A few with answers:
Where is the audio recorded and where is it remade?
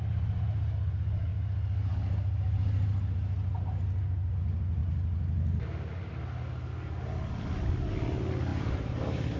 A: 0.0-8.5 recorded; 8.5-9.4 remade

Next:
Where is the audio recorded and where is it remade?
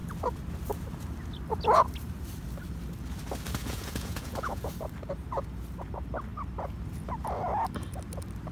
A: 0.0-3.6 recorded; 3.6-4.7 remade; 4.7-8.5 recorded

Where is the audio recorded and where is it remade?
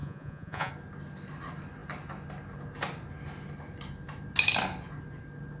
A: 0.0-0.7 remade; 0.7-5.6 recorded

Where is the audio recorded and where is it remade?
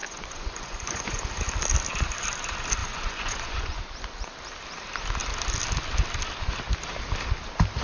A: 0.0-1.2 remade; 1.2-2.8 recorded; 2.8-3.8 remade; 3.8-7.8 recorded